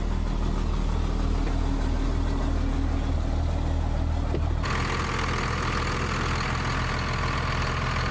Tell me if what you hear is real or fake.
real